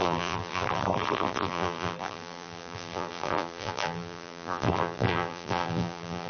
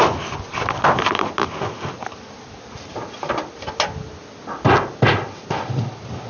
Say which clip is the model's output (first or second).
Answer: first